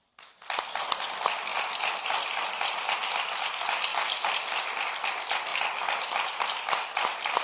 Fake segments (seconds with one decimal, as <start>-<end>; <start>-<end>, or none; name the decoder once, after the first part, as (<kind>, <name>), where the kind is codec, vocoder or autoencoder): none